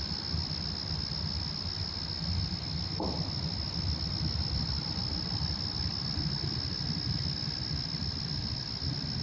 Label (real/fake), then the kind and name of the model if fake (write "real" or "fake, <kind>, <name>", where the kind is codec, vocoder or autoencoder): real